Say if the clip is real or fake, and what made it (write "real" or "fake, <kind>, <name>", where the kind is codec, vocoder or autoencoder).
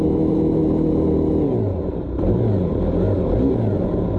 real